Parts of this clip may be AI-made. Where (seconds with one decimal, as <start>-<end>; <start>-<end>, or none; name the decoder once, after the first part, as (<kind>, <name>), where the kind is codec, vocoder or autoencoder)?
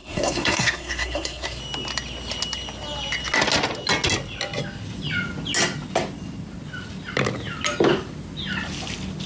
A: 0.0-1.6 (codec, SNAC)